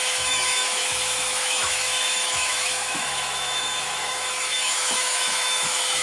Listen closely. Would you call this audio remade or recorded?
remade